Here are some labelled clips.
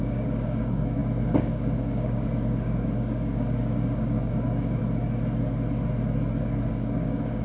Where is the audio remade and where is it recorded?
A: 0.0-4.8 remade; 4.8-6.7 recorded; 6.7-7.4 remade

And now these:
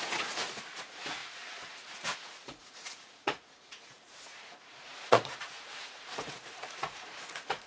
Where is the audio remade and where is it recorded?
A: 0.0-7.7 remade

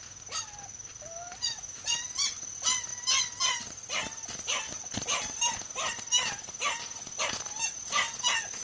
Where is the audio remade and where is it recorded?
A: 0.0-8.6 recorded